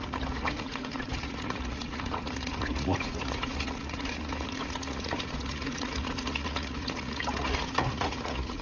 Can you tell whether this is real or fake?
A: fake